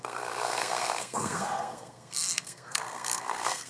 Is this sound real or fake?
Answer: fake